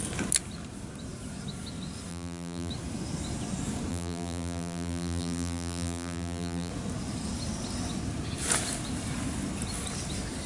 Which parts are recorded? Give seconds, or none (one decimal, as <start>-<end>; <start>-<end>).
0.0-2.1; 2.7-3.9; 6.7-10.5

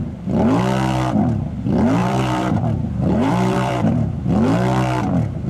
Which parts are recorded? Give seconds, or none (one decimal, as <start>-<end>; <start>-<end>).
0.0-2.0; 4.3-5.5

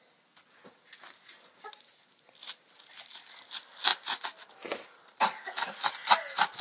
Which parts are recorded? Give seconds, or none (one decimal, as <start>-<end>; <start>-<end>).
0.0-6.6

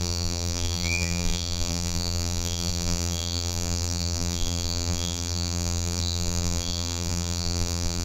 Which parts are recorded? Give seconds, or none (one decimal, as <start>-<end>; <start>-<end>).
none

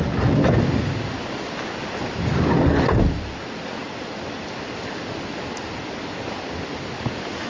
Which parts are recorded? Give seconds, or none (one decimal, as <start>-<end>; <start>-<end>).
0.0-7.5

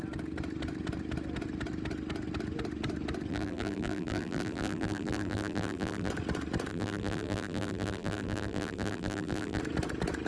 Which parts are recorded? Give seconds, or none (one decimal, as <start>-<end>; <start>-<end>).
0.0-3.3; 6.1-6.7; 9.6-10.3

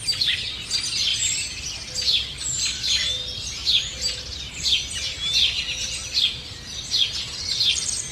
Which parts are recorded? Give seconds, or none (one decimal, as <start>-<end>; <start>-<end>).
0.0-1.1; 1.9-8.1

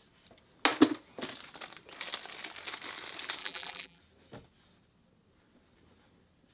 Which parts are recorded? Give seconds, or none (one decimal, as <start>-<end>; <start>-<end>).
0.0-3.4; 4.0-6.5